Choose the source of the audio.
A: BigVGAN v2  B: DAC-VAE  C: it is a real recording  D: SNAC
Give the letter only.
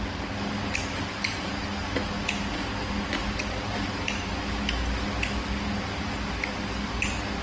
C